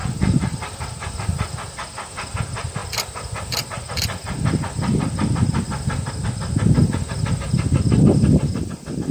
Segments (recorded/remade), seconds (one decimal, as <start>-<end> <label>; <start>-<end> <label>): 0.0-1.1 remade; 1.1-9.1 recorded